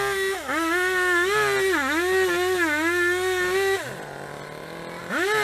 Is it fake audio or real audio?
real